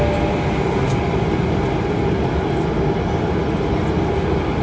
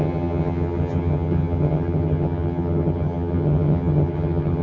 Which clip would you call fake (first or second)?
second